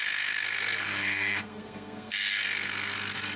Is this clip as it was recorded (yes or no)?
no